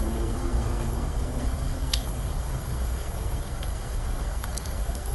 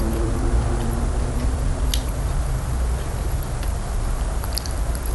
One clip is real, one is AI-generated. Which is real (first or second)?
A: second